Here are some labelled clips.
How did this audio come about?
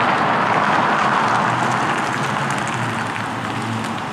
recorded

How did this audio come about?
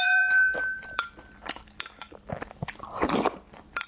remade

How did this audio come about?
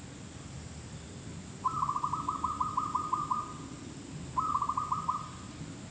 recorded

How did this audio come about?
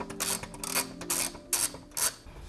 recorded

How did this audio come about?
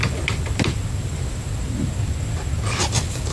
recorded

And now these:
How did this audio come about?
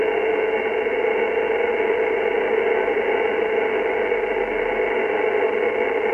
recorded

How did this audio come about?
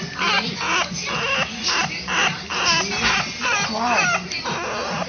recorded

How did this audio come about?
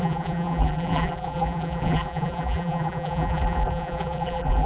remade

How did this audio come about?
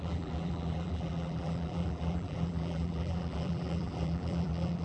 remade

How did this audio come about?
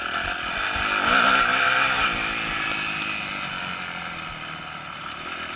recorded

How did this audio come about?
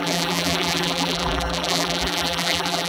remade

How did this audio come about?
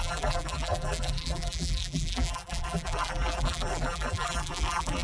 remade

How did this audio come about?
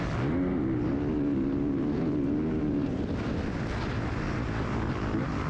recorded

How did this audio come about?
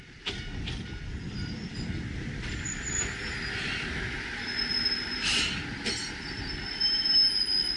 recorded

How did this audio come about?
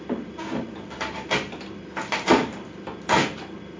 recorded